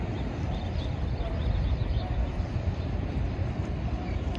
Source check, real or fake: real